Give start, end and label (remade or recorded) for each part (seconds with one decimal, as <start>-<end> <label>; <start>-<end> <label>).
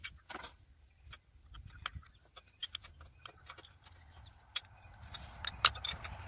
0.0-6.3 recorded